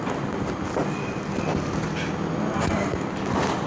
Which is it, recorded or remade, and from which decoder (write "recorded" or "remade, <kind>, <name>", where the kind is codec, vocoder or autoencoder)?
recorded